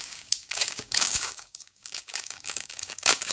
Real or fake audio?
fake